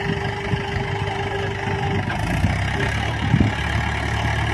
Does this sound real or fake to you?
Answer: real